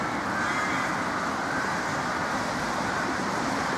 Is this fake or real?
real